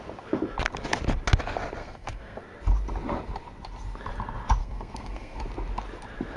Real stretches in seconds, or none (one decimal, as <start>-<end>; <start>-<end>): 0.0-1.8; 2.4-4.6; 5.4-6.4